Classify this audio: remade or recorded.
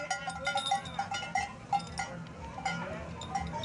recorded